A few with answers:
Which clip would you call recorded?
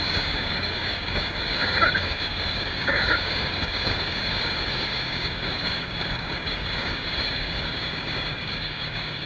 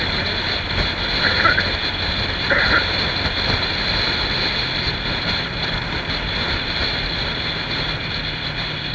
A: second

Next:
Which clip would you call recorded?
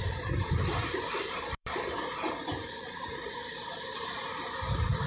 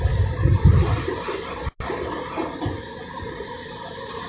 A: second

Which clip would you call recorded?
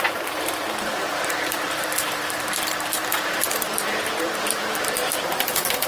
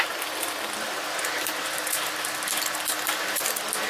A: second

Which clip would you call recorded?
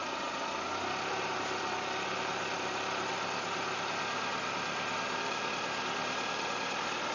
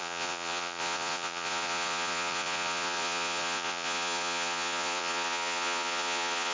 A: first